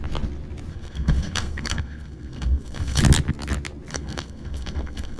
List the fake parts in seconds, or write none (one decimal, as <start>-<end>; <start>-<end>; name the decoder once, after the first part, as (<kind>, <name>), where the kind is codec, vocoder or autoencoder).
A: 0.7-3.0 (codec, SNAC); 3.9-5.2